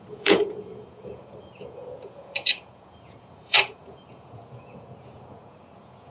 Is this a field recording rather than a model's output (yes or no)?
no